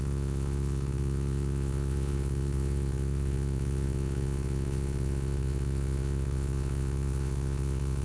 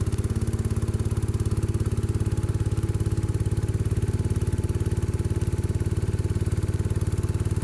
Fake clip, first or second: first